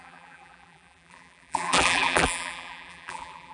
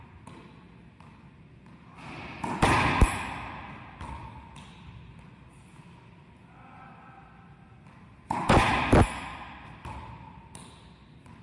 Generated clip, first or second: first